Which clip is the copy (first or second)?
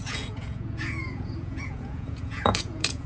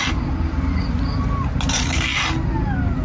first